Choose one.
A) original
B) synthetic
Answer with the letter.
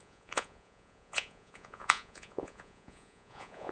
B